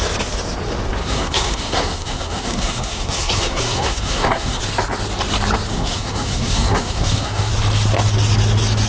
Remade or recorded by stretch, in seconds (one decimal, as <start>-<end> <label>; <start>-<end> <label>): 0.0-1.0 recorded; 1.0-4.6 remade; 4.6-5.7 recorded; 5.7-7.5 remade; 7.5-8.9 recorded

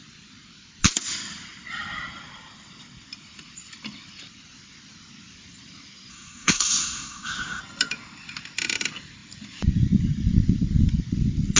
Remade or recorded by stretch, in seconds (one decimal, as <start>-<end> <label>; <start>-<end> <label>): 0.0-6.1 recorded; 6.1-7.6 remade; 7.6-11.6 recorded